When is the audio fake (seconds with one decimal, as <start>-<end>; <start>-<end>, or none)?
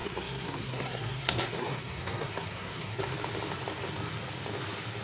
0.0-3.0